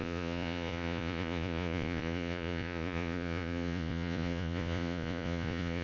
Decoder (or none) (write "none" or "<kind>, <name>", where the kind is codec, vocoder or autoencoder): vocoder, Vocos